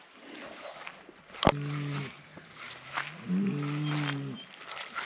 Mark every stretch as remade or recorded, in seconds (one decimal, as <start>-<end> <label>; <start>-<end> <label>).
0.0-5.1 recorded

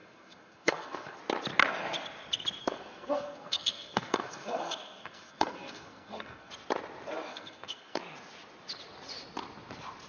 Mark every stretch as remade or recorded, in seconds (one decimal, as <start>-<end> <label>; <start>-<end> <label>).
0.0-1.2 remade; 1.2-2.6 recorded; 2.6-6.5 remade; 6.5-7.3 recorded; 7.3-8.0 remade; 8.0-10.1 recorded